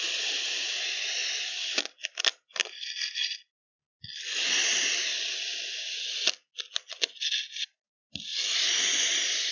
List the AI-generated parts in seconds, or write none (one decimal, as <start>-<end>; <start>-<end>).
none